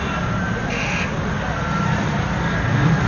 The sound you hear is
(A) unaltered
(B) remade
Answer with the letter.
A